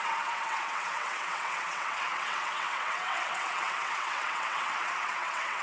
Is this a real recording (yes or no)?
no